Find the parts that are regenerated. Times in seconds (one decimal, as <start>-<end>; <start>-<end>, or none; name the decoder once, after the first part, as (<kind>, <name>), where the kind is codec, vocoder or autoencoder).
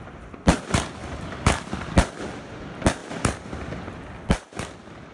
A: 1.0-1.7 (codec, DAC)